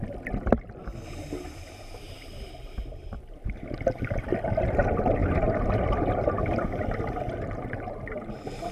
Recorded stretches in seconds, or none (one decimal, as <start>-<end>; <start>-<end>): 0.0-8.7